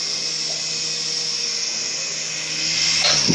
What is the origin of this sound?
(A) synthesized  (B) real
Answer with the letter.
B